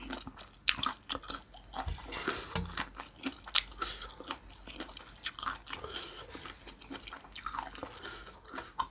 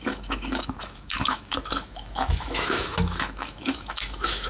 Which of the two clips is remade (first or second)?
second